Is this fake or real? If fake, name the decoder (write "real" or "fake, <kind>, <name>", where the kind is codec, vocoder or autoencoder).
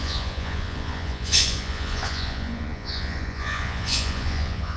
fake, vocoder, Vocos